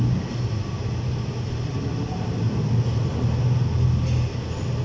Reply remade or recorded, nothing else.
recorded